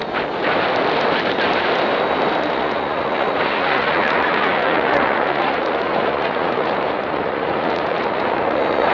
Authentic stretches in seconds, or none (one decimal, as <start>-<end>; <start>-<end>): 0.0-2.4